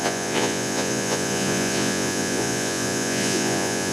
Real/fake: fake